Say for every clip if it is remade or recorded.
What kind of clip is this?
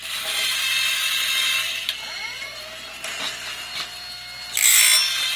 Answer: recorded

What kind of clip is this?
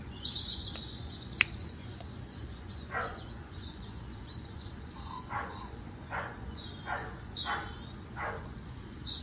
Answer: remade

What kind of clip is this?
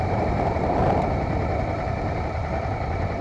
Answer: recorded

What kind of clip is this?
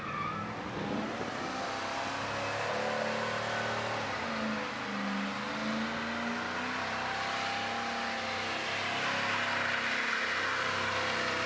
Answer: recorded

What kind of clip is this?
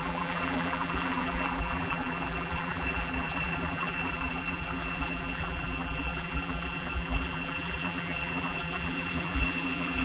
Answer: remade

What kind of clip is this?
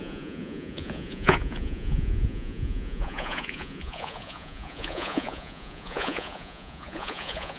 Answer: remade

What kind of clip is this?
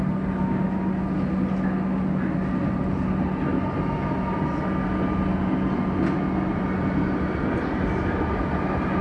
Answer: recorded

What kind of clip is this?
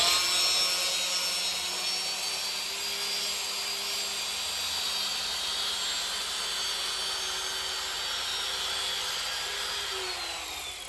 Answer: recorded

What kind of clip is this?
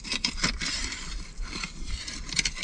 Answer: remade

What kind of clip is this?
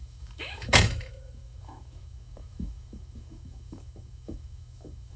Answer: remade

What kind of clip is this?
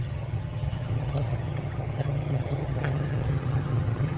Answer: remade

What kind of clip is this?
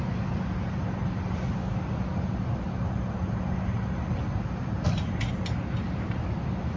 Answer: recorded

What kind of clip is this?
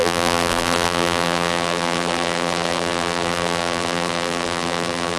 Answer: remade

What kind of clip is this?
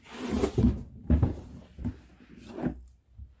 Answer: recorded